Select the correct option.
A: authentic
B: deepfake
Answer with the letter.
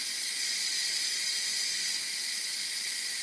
A